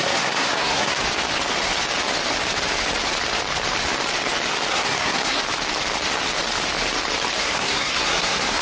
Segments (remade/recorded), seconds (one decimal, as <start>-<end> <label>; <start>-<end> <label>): 0.0-1.0 remade; 1.0-4.7 recorded; 4.7-5.4 remade; 5.4-7.4 recorded; 7.4-8.6 remade